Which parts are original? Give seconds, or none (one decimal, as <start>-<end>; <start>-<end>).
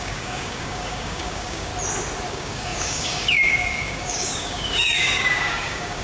1.7-2.3